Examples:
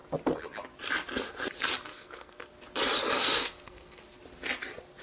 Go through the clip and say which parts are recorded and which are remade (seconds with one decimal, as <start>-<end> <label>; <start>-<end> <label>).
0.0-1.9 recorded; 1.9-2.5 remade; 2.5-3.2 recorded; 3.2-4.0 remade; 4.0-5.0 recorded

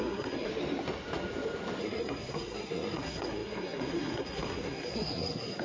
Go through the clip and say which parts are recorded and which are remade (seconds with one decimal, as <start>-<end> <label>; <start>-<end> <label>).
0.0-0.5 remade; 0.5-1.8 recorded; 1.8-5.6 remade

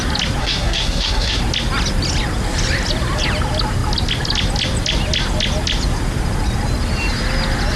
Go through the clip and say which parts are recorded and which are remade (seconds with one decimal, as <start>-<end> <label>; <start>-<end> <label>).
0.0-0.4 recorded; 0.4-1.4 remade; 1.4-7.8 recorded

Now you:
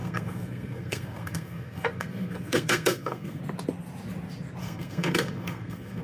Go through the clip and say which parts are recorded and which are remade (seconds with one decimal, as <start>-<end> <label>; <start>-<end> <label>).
0.0-3.4 remade; 3.4-4.6 recorded; 4.6-6.0 remade

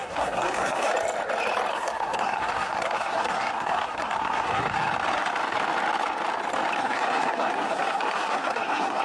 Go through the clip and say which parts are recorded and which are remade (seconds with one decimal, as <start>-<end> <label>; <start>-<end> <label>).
0.0-0.9 remade; 0.9-1.7 recorded; 1.7-4.9 remade; 4.9-6.8 recorded; 6.8-9.0 remade

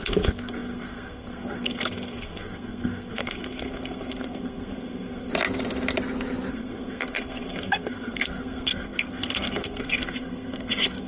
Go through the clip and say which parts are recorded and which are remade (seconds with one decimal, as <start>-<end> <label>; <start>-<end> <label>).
0.0-5.3 remade; 5.3-6.5 recorded; 6.5-11.1 remade

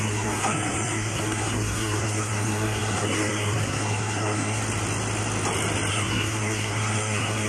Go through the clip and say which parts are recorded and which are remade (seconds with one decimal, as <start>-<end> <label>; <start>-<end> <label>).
0.0-4.6 remade; 4.6-5.9 recorded; 5.9-7.5 remade

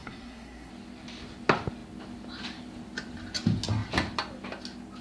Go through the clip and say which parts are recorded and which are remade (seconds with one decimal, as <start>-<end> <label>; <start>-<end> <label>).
0.0-0.7 remade; 0.7-5.0 recorded